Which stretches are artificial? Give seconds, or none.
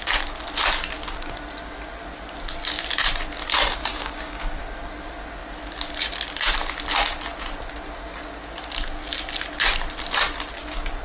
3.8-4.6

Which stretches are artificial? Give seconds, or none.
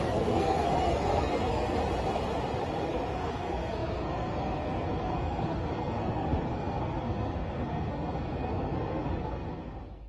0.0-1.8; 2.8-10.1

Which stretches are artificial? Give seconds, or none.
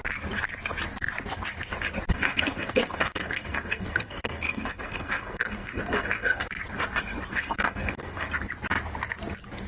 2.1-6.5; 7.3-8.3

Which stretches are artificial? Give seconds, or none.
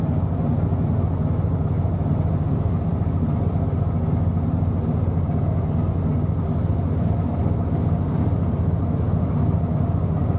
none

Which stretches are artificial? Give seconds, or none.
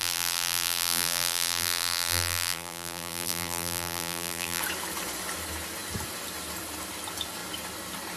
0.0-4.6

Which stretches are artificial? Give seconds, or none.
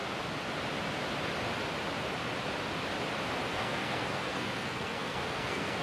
3.5-5.8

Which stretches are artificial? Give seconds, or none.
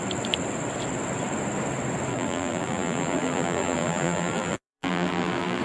2.1-5.6